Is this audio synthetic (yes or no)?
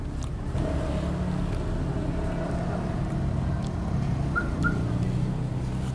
no